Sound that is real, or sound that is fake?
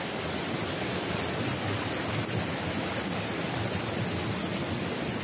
real